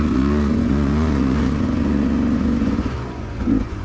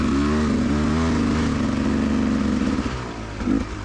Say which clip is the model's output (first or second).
first